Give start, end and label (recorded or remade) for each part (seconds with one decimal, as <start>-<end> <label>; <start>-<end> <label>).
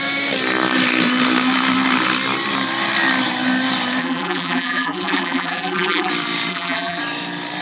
0.0-4.0 recorded; 4.0-6.1 remade; 6.1-6.5 recorded; 6.5-7.0 remade; 7.0-7.6 recorded